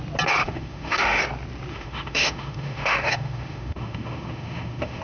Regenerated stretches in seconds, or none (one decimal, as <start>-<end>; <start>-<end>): 0.4-1.2; 1.7-5.0